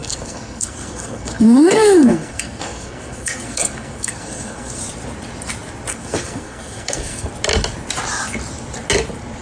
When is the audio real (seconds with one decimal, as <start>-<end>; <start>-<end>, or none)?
4.8-5.9; 7.3-9.4